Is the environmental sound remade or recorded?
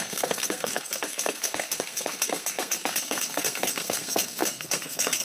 remade